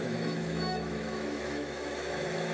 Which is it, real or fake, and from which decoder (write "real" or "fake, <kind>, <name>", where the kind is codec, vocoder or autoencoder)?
fake, autoencoder, DAC-VAE